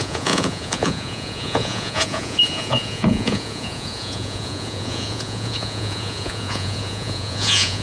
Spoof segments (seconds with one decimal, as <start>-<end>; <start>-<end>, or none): 0.0-7.8